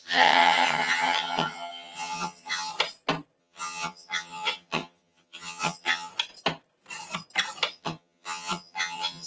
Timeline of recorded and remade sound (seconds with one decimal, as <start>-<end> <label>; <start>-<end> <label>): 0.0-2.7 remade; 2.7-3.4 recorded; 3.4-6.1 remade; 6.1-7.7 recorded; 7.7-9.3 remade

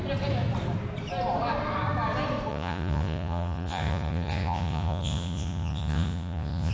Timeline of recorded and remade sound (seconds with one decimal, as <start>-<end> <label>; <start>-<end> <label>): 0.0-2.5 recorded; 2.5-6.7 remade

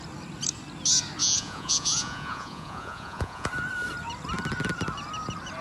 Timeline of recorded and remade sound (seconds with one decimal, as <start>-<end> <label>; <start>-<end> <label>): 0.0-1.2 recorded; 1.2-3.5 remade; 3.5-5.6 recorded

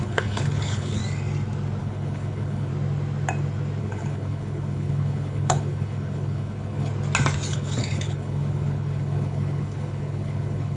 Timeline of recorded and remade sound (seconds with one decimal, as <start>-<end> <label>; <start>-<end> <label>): 0.0-1.0 remade; 1.0-1.8 recorded; 1.8-2.7 remade; 2.7-3.8 recorded; 3.8-6.9 remade; 6.9-7.5 recorded; 7.5-10.8 remade

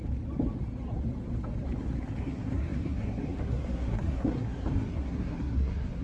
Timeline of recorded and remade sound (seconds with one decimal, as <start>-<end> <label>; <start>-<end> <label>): 0.0-2.2 recorded; 2.2-6.0 remade

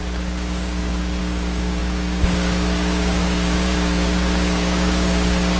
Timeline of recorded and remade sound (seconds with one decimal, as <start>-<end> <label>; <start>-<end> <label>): 0.0-5.6 remade

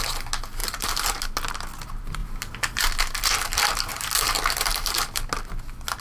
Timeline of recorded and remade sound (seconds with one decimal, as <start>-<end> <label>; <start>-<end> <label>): 0.0-0.6 recorded; 0.6-1.2 remade; 1.2-3.9 recorded; 3.9-4.9 remade; 4.9-6.0 recorded